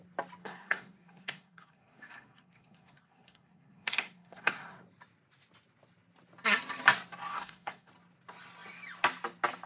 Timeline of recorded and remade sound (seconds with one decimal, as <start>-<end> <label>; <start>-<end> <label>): 0.0-0.4 recorded; 0.4-4.8 remade; 4.8-7.3 recorded; 7.3-7.9 remade; 7.9-9.7 recorded